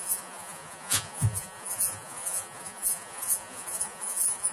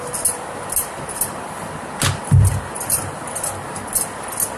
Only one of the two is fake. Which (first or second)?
first